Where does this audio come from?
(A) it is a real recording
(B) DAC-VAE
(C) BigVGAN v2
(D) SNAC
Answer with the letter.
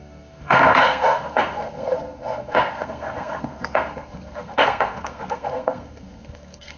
D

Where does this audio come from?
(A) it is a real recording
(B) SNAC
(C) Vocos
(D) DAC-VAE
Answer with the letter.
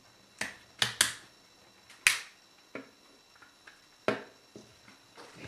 A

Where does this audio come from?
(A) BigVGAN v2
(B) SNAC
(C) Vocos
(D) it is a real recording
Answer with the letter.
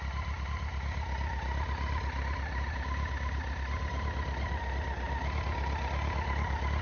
D